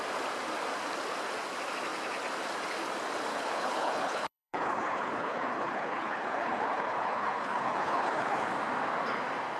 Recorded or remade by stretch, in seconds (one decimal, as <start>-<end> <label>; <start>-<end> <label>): 0.0-3.3 recorded; 3.3-8.5 remade; 8.5-9.6 recorded